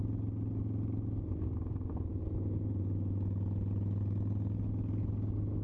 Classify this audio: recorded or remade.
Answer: recorded